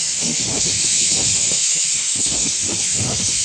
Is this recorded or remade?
remade